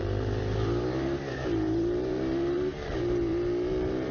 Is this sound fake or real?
fake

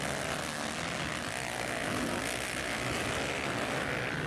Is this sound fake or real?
real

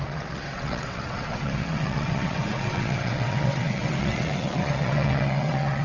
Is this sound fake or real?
fake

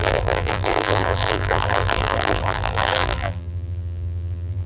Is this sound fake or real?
fake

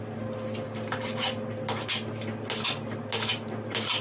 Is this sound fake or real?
real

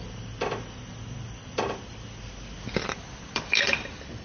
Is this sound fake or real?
fake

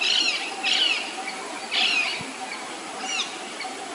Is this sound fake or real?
real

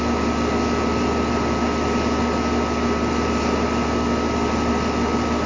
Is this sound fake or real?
real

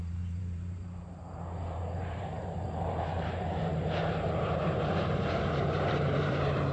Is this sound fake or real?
fake